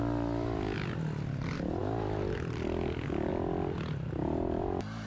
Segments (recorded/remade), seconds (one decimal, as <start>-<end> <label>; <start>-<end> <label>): 0.0-5.1 recorded